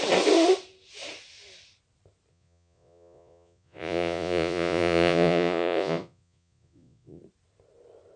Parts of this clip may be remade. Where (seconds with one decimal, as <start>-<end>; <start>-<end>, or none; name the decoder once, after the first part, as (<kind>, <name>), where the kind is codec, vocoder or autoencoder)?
2.3-7.2 (vocoder, Vocos)